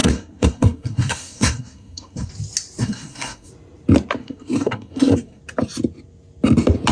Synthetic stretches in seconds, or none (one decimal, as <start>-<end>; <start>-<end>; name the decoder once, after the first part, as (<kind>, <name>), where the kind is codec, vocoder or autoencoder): 0.0-2.3 (codec, SNAC); 2.8-3.5; 4.2-5.4